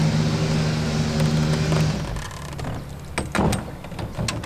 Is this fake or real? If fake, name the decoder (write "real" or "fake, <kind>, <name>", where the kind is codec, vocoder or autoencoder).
real